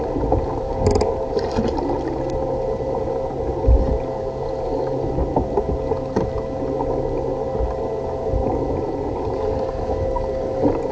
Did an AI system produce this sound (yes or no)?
no